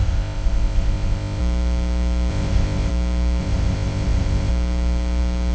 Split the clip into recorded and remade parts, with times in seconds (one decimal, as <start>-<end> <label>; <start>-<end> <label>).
0.0-1.4 remade; 1.4-2.3 recorded; 2.3-2.9 remade; 2.9-3.4 recorded; 3.4-4.5 remade; 4.5-5.5 recorded